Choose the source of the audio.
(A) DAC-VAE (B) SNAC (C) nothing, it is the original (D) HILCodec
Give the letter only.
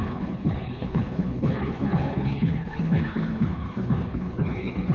D